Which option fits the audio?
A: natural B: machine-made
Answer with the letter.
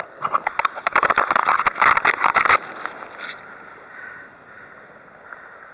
A